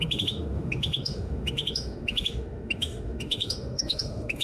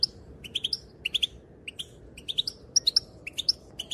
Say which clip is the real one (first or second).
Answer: second